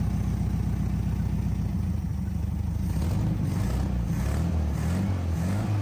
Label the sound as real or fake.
real